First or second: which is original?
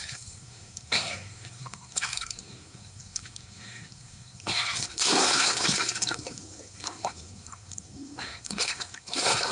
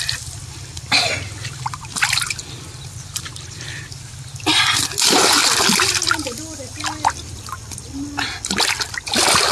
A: second